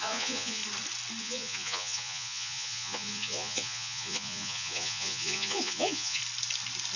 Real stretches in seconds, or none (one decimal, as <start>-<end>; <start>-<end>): 0.6-1.2; 6.2-7.0